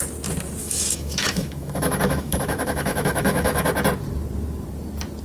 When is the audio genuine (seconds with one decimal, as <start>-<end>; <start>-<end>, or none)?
0.0-0.6; 3.7-5.2